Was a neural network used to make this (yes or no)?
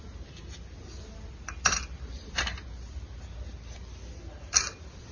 no